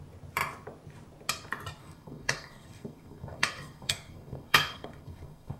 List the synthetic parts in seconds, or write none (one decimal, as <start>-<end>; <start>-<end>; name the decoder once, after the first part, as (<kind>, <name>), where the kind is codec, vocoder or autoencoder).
1.8-5.6 (codec, SNAC)